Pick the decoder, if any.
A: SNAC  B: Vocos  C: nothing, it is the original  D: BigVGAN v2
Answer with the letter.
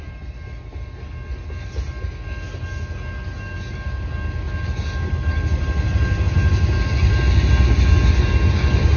C